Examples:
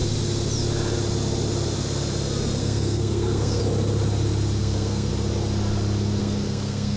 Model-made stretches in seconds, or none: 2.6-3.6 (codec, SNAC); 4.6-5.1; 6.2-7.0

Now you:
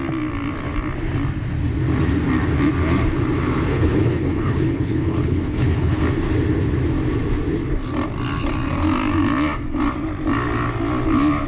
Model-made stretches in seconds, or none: 3.7-6.0 (codec, HILCodec)

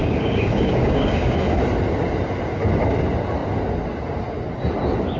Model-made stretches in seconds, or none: 0.0-1.6 (codec, DAC)

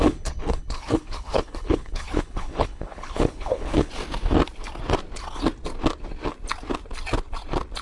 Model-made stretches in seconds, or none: 0.0-3.9 (codec, HILCodec)

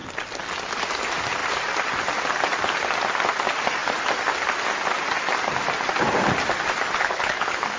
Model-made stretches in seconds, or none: 7.0-7.8 (codec, HILCodec)